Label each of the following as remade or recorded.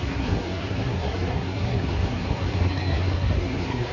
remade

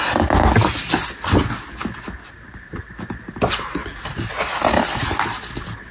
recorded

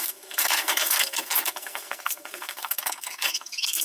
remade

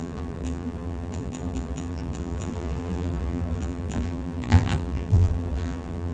remade